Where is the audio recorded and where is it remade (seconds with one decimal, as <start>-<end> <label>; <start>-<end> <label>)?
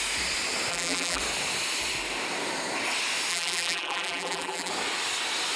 0.0-0.7 recorded; 0.7-1.2 remade; 1.2-3.3 recorded; 3.3-4.7 remade; 4.7-5.6 recorded